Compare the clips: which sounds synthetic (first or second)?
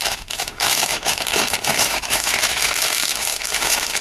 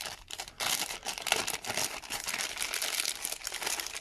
first